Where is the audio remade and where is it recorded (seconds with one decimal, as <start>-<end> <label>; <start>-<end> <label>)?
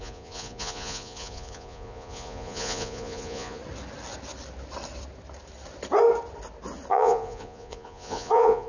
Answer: 0.0-3.6 remade; 3.6-6.9 recorded; 6.9-8.7 remade